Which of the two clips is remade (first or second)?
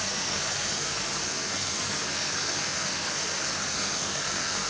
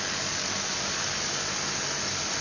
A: first